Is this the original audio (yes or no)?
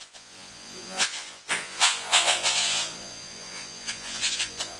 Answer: no